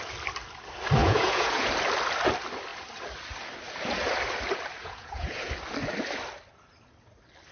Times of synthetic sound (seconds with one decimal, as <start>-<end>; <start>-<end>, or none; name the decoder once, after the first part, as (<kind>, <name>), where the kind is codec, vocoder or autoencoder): 1.0-1.7 (vocoder, Vocos); 4.8-5.5